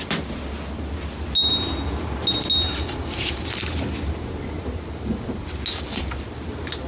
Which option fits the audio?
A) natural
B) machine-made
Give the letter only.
A